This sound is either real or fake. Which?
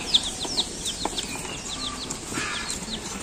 real